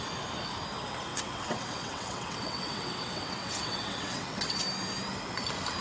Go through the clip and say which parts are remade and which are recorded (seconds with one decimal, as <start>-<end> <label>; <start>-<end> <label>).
0.0-1.1 recorded; 1.1-4.6 remade; 4.6-5.8 recorded